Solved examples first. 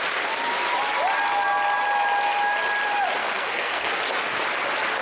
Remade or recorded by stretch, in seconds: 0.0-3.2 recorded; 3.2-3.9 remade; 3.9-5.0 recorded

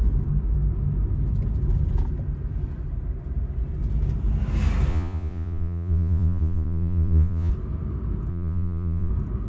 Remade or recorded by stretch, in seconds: 0.0-4.9 recorded; 4.9-7.5 remade; 7.5-8.3 recorded; 8.3-9.1 remade; 9.1-9.5 recorded

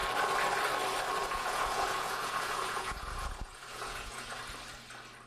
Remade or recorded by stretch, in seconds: 0.0-1.2 recorded; 1.2-4.4 remade; 4.4-5.3 recorded

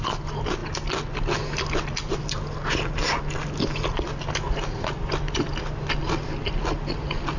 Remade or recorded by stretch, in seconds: 0.0-7.4 recorded

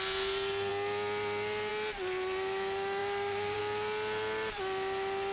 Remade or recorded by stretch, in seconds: 0.0-3.0 recorded; 3.0-3.6 remade; 3.6-5.3 recorded

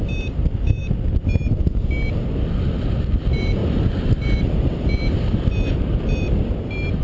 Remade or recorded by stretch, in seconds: 0.0-0.8 remade; 0.8-3.0 recorded; 3.0-7.0 remade